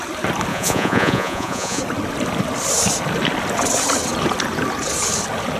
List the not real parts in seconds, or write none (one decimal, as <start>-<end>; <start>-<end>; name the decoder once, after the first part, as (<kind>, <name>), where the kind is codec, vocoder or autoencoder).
0.5-1.8 (vocoder, Vocos)